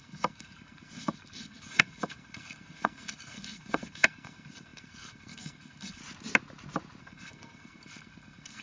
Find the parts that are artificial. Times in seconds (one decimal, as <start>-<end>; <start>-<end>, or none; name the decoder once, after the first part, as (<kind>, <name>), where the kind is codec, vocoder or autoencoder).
0.0-6.0 (codec, SNAC); 7.0-8.6